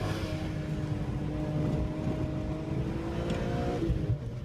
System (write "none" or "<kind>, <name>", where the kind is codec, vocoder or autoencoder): none